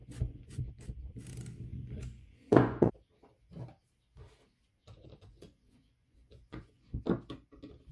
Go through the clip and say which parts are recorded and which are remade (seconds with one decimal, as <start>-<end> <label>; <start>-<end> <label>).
0.0-0.7 remade; 0.7-1.7 recorded; 1.7-2.9 remade; 2.9-4.8 recorded; 4.8-7.0 remade; 7.0-7.9 recorded